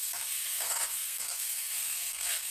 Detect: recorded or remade remade